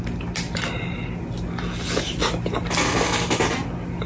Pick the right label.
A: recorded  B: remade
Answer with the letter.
A